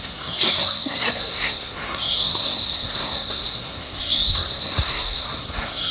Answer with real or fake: fake